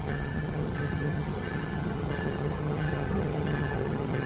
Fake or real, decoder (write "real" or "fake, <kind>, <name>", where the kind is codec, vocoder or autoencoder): fake, vocoder, HiFi-GAN